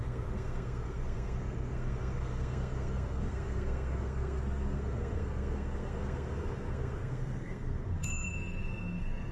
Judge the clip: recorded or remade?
remade